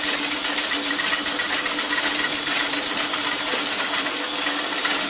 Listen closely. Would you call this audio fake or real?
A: real